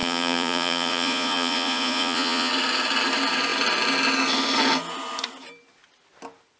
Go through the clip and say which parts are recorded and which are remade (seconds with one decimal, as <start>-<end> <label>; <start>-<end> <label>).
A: 0.0-2.5 remade; 2.5-6.6 recorded